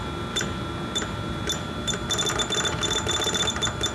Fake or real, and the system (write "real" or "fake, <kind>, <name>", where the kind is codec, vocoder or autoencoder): real